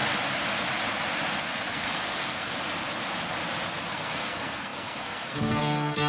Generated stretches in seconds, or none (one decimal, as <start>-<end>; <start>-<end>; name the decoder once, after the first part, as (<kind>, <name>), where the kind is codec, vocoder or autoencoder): 1.7-2.5 (codec, SNAC); 3.9-6.1